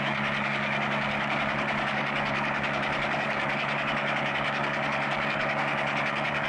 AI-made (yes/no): yes